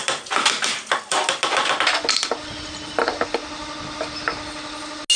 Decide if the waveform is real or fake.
real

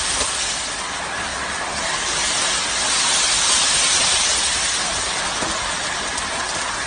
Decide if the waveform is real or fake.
real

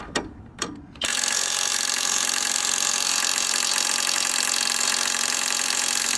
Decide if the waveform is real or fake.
fake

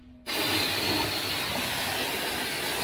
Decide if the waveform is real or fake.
real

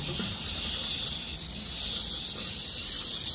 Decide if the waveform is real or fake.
fake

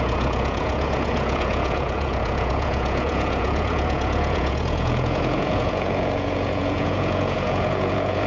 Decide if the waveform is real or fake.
fake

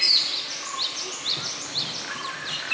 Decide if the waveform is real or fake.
real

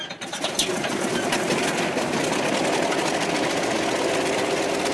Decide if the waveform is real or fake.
real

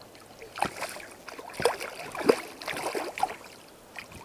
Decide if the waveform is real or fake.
real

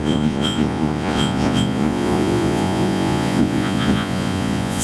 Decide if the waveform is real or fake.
fake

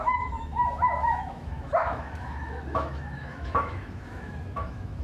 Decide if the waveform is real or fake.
fake